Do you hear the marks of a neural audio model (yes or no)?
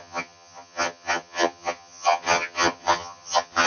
yes